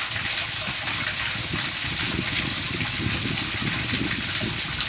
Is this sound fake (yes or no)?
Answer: no